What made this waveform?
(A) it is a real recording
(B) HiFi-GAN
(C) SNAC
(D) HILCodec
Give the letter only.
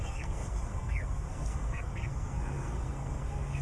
C